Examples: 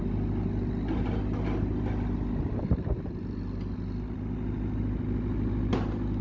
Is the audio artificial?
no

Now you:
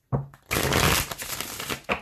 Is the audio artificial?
no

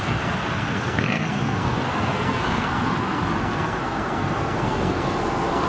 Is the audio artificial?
yes